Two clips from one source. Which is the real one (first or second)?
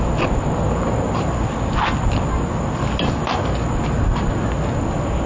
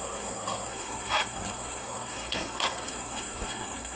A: first